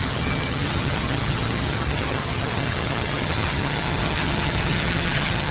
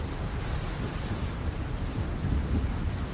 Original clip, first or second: second